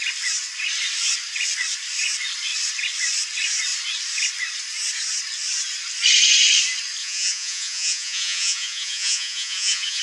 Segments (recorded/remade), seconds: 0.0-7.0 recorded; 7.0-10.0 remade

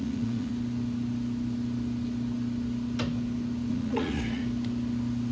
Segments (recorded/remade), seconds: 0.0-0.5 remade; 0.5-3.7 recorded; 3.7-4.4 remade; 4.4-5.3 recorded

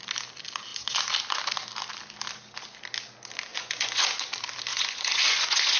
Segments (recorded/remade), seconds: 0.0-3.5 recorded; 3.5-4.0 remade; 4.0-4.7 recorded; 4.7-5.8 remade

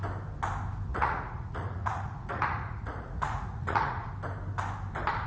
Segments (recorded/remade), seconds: 0.0-0.9 recorded; 0.9-4.1 remade; 4.1-5.3 recorded

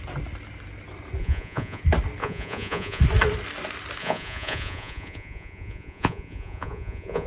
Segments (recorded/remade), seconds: 0.0-1.2 recorded; 1.2-1.8 remade; 1.8-2.2 recorded; 2.2-3.0 remade; 3.0-4.0 recorded; 4.0-7.3 remade

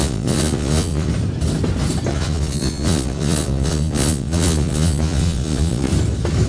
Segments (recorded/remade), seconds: 0.0-1.1 remade; 1.1-2.1 recorded; 2.1-5.9 remade; 5.9-6.5 recorded

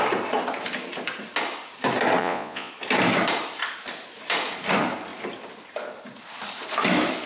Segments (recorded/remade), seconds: 0.0-2.2 recorded; 2.2-2.7 remade; 2.7-7.3 recorded